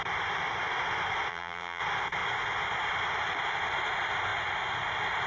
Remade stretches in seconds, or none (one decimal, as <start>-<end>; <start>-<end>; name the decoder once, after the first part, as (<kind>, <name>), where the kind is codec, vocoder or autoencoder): 1.3-1.8 (vocoder, BigVGAN v2)